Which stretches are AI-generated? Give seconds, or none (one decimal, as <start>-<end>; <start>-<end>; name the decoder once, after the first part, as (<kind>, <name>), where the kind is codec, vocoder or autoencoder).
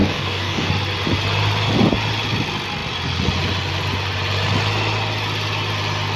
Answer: 0.0-0.7 (codec, DAC)